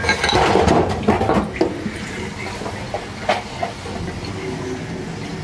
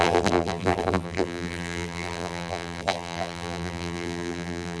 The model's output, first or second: second